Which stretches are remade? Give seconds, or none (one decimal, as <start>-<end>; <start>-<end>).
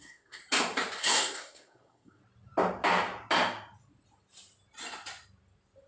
0.0-0.4; 1.0-2.2